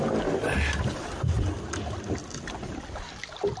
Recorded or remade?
recorded